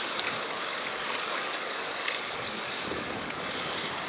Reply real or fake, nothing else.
fake